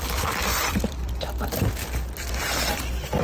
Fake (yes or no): yes